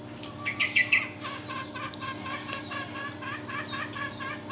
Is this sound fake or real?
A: real